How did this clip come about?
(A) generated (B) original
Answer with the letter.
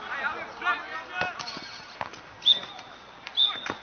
B